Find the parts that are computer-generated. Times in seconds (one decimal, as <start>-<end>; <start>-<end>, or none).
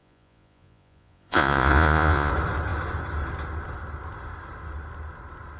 0.0-2.3